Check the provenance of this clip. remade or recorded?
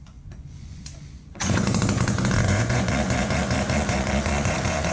remade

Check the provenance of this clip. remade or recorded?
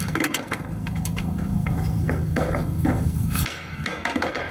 remade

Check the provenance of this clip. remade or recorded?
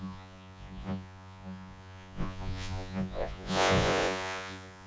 remade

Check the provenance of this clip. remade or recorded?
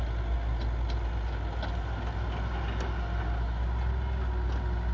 recorded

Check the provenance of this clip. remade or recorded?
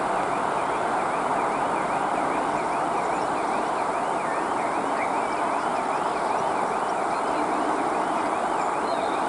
recorded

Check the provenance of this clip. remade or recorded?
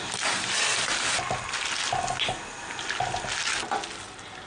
recorded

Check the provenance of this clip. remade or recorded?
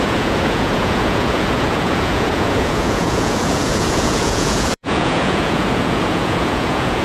remade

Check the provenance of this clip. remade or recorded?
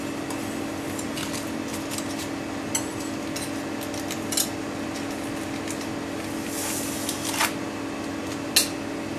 recorded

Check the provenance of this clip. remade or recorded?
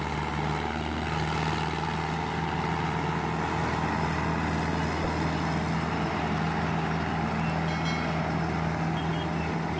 recorded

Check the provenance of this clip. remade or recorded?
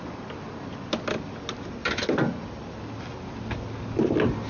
recorded